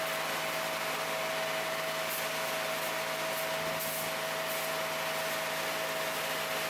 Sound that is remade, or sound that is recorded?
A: recorded